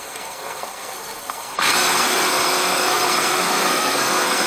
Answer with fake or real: fake